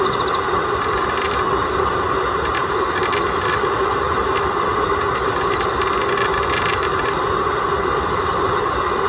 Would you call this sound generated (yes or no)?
no